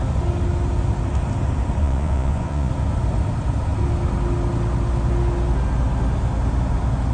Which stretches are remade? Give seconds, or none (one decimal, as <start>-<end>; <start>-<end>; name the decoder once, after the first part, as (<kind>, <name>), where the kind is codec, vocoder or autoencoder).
1.8-2.7 (vocoder, Vocos)

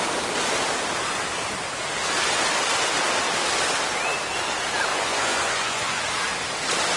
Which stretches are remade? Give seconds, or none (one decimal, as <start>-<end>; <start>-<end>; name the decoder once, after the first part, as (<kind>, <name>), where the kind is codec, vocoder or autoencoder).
4.9-6.0 (vocoder, Vocos)

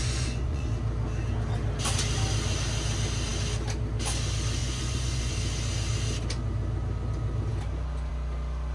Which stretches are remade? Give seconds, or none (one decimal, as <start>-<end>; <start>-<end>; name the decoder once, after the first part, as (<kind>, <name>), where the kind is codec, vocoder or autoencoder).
0.0-0.7 (vocoder, Vocos); 4.6-5.3

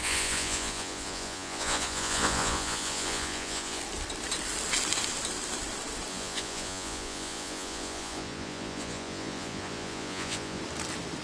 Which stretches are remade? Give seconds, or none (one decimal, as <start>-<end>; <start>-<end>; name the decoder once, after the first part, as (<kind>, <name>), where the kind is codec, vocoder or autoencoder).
0.0-3.8 (vocoder, Vocos); 6.1-10.6